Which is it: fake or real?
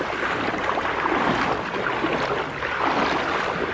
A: real